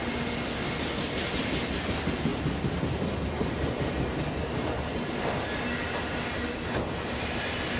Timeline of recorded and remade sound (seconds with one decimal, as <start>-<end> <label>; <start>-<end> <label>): 0.0-7.8 recorded